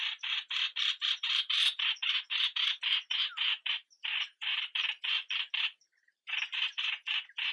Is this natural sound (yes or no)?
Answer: no